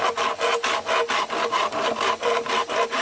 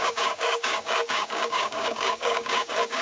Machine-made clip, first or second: second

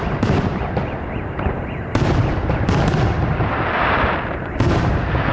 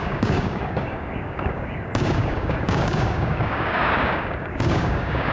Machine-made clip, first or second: second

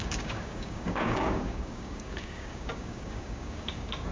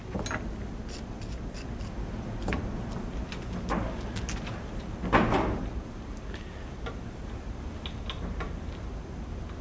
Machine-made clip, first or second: first